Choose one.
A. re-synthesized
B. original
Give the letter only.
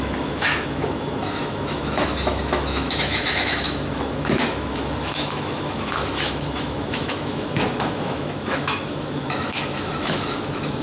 A